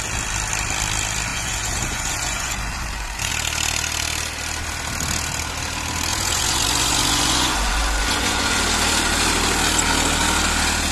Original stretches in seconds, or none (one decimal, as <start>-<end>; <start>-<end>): 0.0-1.3; 3.3-6.1; 8.6-10.9